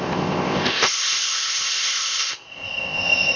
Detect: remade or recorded remade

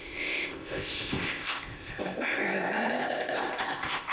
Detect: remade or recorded remade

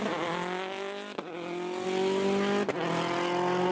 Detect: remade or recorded recorded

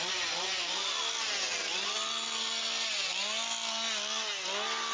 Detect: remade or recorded recorded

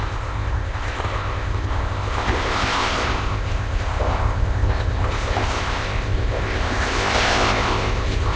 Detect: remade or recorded remade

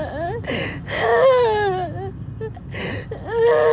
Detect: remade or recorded recorded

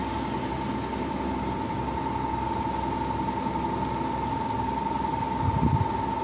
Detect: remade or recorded recorded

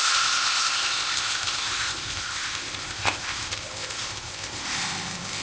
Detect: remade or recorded remade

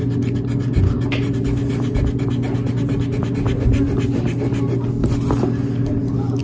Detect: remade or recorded recorded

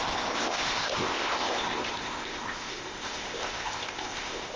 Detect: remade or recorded remade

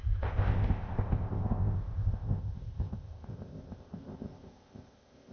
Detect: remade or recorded remade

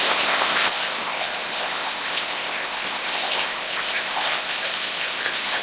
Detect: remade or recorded remade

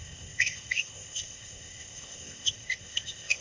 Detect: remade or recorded remade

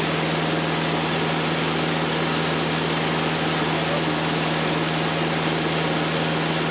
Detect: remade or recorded recorded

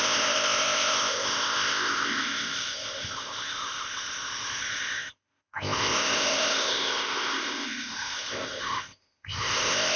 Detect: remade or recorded remade